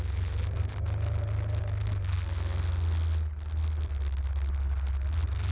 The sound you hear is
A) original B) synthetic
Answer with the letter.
A